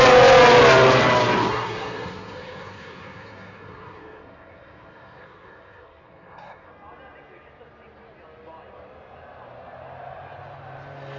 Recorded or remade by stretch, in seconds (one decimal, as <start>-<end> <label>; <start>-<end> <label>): 0.0-1.5 recorded; 1.5-6.7 remade; 6.7-11.2 recorded